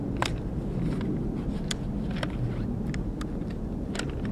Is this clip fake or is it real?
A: real